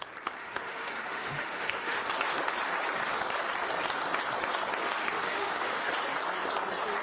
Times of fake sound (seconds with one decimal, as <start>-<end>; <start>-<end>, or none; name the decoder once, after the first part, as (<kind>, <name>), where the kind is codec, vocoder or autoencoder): 0.4-2.0 (autoencoder, DAC-VAE); 4.8-5.9